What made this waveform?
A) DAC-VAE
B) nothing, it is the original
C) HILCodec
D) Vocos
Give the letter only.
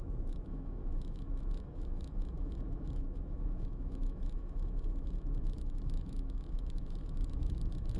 A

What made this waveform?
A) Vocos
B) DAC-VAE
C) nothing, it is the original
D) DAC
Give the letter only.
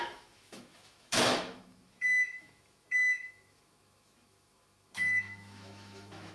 B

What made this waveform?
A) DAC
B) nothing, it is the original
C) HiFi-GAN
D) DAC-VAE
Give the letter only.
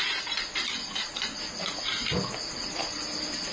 B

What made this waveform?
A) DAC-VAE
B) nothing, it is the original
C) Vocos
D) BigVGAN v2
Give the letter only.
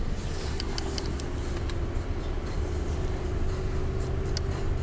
B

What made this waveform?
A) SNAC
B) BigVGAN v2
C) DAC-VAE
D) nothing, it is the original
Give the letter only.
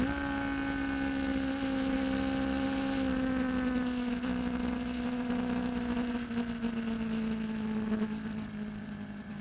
D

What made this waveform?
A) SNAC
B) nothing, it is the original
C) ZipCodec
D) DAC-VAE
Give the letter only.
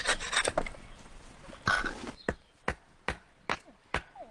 B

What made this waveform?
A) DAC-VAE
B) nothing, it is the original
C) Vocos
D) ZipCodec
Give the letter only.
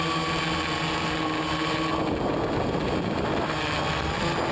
B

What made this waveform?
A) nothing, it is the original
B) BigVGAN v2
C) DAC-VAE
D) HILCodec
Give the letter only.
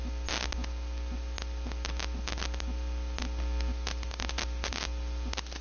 A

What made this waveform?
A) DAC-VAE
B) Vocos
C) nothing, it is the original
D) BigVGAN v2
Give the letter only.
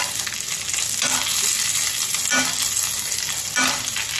C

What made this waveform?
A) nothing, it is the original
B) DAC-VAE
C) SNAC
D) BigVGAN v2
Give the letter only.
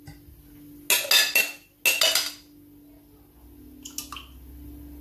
A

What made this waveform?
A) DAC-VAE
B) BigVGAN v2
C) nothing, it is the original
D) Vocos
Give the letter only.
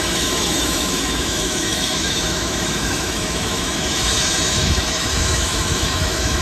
A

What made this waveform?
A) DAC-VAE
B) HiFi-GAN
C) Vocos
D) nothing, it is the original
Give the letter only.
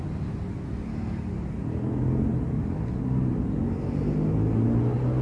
D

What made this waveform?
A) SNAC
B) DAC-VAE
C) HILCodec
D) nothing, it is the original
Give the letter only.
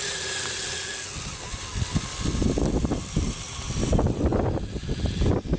D